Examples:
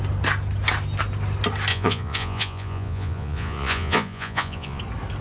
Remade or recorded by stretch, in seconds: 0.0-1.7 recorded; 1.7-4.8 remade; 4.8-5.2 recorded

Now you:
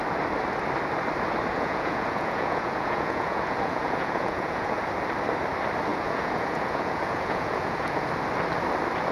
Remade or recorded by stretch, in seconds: 0.0-1.5 recorded; 1.5-4.8 remade; 4.8-5.9 recorded; 5.9-8.1 remade; 8.1-9.1 recorded

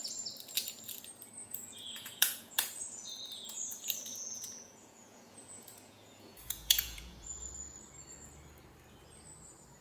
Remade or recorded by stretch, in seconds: 0.0-1.4 recorded; 1.4-3.1 remade; 3.1-4.1 recorded; 4.1-7.5 remade; 7.5-9.8 recorded

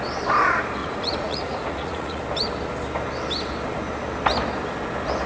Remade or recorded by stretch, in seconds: 0.0-0.8 recorded; 0.8-2.2 remade; 2.2-5.3 recorded

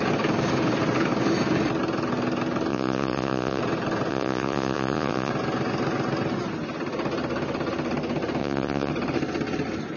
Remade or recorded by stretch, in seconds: 0.0-2.7 recorded; 2.7-3.6 remade; 3.6-4.1 recorded; 4.1-5.3 remade; 5.3-8.4 recorded; 8.4-8.9 remade; 8.9-10.0 recorded